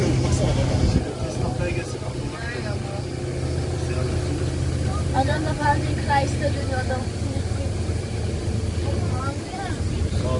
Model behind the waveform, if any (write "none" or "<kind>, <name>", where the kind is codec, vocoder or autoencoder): none